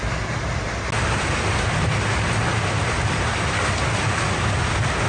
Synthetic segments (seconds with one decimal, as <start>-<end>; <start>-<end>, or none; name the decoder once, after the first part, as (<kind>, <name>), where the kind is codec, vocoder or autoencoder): none